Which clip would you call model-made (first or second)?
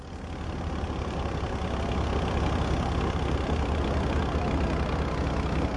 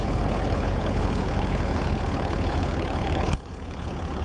second